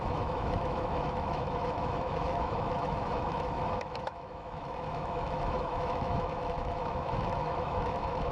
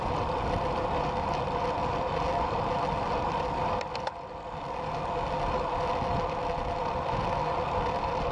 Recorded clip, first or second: second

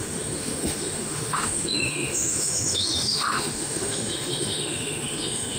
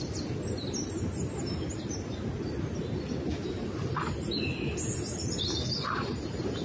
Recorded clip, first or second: second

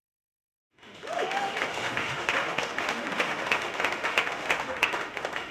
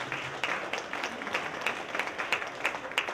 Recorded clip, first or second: second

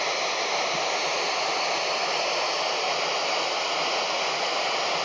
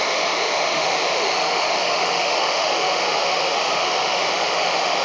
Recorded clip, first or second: first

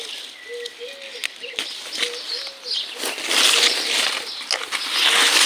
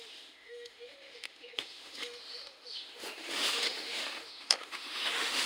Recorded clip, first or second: first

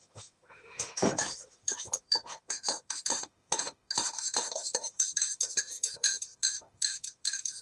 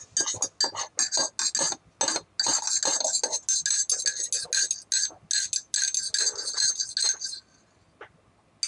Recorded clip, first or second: second